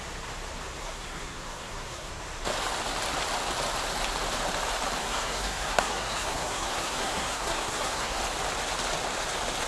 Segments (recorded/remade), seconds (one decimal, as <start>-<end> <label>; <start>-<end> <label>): 0.0-0.8 recorded; 0.8-2.1 remade; 2.1-5.0 recorded; 5.0-8.2 remade; 8.2-9.7 recorded